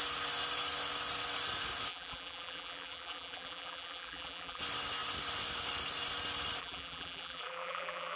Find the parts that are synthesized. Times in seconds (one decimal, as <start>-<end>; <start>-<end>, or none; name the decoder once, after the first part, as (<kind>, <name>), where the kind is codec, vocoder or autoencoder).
1.9-4.6 (vocoder, BigVGAN v2); 6.6-8.2